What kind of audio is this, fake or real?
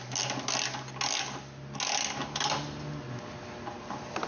real